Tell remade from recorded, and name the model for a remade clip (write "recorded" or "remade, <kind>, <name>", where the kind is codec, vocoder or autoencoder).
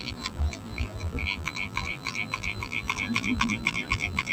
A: remade, vocoder, BigVGAN v2